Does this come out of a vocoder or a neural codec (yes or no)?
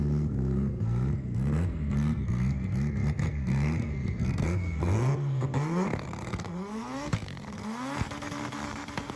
yes